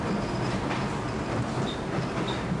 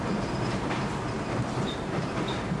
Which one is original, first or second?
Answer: first